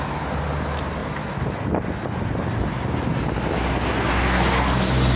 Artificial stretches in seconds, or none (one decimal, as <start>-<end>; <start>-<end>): none